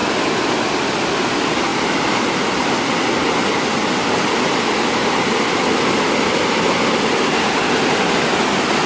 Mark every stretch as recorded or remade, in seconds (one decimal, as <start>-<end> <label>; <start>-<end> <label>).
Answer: 0.0-8.9 recorded